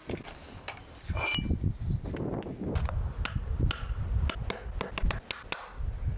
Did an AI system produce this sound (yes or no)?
no